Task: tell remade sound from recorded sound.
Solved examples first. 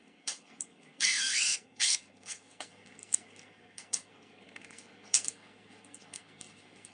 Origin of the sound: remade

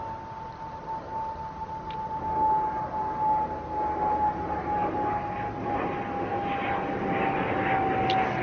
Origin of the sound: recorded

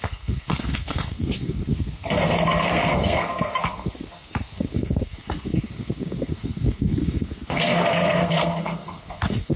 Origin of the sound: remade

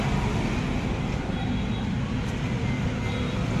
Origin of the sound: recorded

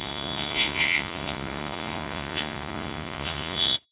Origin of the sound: remade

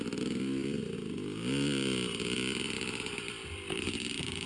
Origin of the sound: recorded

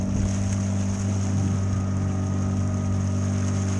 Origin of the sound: recorded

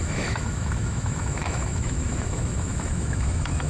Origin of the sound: remade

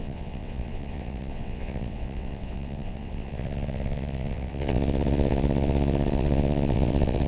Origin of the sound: remade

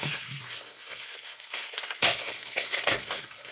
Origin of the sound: remade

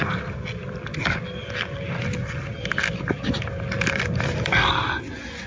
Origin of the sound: recorded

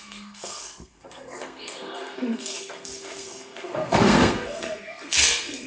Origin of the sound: remade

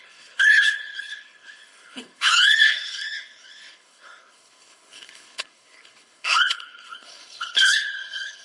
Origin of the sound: remade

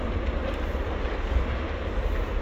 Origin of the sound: recorded